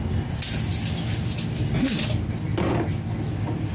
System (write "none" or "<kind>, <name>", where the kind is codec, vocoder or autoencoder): none